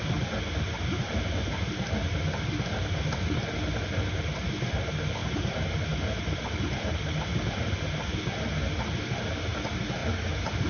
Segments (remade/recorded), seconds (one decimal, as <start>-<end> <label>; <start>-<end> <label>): 0.0-10.7 recorded